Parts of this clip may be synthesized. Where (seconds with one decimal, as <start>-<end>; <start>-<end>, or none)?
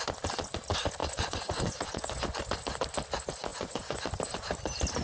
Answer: 1.0-2.4; 3.5-4.1